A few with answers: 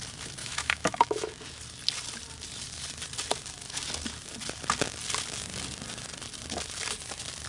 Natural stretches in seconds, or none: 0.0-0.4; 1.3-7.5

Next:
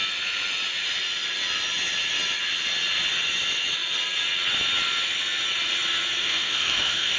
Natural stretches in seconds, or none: 0.0-6.2

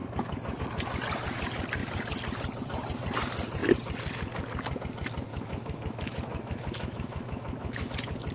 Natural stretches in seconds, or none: 0.6-5.3; 7.9-8.3

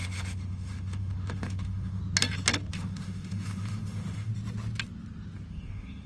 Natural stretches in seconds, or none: 2.0-2.7; 4.3-5.5